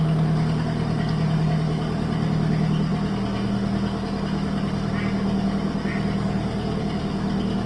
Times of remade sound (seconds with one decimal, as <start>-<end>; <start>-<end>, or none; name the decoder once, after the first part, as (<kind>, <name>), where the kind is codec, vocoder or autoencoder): none